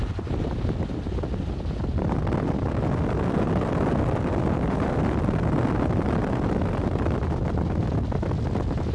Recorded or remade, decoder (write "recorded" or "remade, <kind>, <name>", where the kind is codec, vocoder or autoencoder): recorded